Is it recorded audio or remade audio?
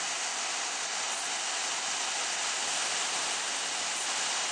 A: recorded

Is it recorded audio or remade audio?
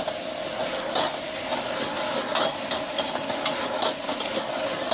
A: recorded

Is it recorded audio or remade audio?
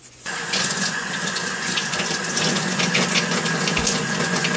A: remade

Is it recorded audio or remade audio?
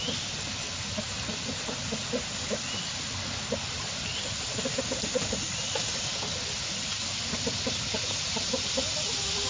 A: recorded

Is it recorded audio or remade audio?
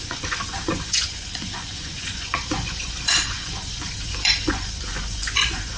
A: remade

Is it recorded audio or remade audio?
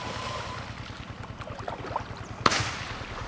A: recorded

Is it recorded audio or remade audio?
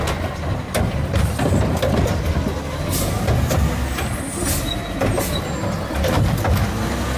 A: recorded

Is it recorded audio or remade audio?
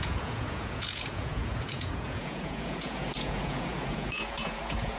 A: remade